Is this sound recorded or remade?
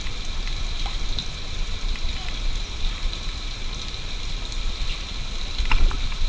recorded